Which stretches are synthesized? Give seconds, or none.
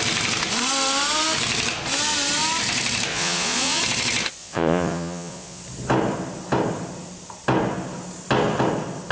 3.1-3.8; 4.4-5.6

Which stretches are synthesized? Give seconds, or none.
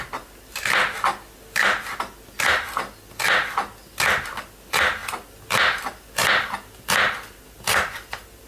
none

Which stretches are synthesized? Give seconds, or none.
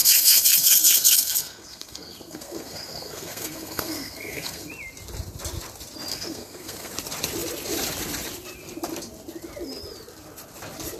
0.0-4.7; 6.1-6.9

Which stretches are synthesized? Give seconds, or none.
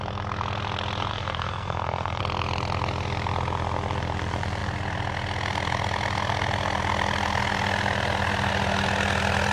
1.1-2.2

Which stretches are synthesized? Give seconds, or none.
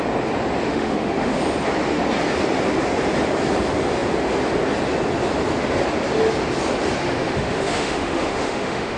0.7-1.4; 7.0-9.0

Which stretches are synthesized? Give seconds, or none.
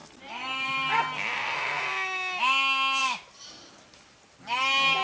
0.0-1.0; 3.0-4.4